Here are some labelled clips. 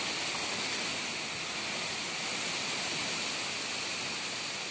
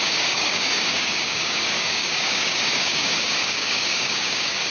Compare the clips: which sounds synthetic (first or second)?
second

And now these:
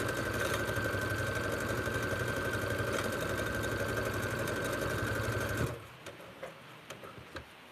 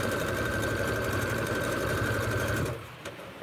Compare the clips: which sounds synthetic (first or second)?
second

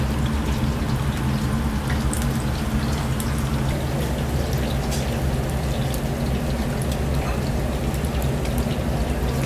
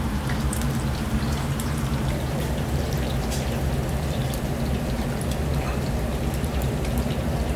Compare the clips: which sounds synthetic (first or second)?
second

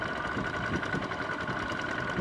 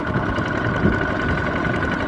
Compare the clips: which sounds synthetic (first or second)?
first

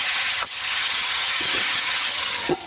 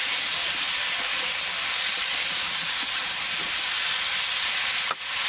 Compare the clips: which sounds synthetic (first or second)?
first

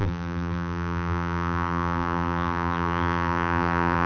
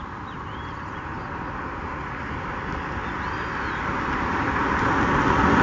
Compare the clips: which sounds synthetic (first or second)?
first